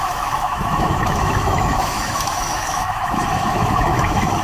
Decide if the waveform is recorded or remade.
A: remade